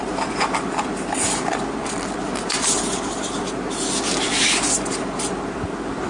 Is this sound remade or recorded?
recorded